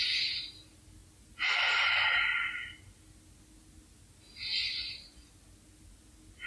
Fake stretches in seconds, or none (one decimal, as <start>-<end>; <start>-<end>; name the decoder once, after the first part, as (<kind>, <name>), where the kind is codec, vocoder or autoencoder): 4.6-5.3 (vocoder, Vocos)